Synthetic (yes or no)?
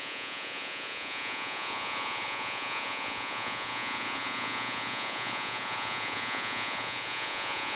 yes